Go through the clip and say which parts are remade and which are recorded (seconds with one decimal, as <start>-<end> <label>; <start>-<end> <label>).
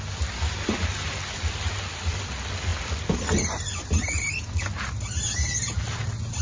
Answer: 0.0-6.4 recorded